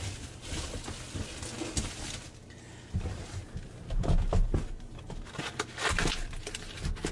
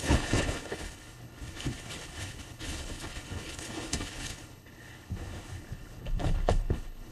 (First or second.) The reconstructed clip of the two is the second